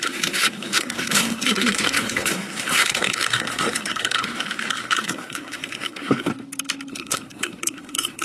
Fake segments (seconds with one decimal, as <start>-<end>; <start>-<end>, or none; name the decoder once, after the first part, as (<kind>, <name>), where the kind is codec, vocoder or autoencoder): 0.0-6.3 (codec, SNAC); 6.9-8.2